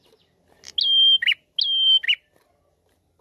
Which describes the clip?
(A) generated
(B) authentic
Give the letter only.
B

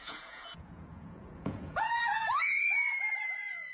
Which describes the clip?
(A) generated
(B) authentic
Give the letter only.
A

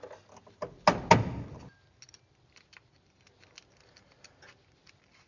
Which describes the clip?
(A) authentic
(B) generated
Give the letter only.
A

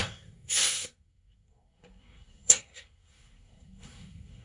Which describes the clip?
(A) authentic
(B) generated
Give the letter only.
B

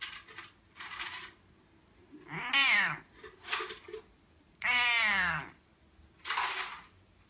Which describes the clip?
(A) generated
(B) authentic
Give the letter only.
B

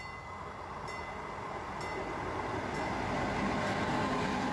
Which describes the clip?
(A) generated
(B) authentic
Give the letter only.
B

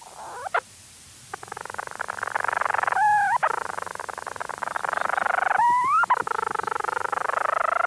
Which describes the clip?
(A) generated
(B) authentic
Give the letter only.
B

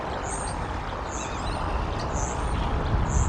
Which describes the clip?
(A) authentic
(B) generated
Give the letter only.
A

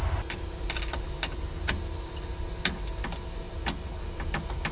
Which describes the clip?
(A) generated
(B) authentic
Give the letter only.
B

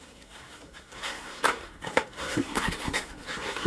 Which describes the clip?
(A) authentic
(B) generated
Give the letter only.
B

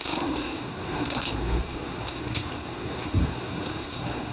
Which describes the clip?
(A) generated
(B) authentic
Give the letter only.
A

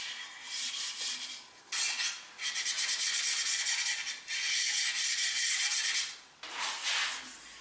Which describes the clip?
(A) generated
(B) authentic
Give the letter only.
B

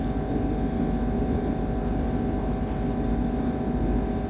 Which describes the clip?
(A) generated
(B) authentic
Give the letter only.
B